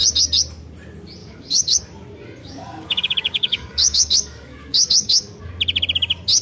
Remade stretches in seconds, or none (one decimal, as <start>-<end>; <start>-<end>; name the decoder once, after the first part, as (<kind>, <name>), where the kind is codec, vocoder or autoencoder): 1.2-1.8 (codec, DAC); 2.4-5.4

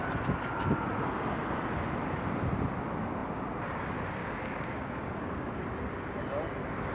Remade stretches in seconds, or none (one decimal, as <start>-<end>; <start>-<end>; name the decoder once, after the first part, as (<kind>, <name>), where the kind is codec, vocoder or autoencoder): 4.2-5.5 (codec, DAC)

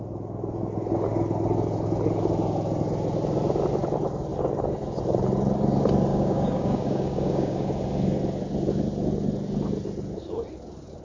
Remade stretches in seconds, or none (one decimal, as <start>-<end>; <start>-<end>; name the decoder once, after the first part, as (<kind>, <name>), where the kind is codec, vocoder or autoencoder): 6.1-7.7 (codec, DAC)

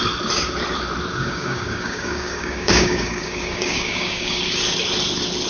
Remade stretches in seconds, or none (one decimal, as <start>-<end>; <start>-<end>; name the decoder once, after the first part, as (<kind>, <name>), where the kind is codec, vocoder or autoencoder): 1.1-4.4 (codec, DAC)

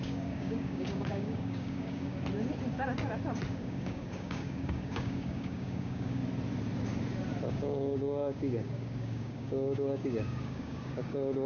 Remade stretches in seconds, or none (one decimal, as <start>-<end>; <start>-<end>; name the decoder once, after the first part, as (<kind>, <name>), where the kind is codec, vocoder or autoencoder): 0.0-2.1 (codec, DAC); 3.5-6.2; 7.5-11.5

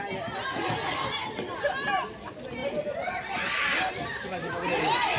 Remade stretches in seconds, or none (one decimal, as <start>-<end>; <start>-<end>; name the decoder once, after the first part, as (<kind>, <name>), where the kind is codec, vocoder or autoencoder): none

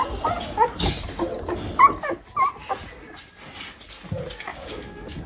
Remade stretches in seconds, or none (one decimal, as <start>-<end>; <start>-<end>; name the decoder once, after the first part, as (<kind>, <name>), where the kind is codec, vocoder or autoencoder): 4.5-5.3 (codec, DAC)